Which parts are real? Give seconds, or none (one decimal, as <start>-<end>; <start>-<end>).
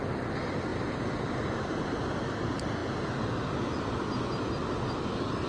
0.0-5.5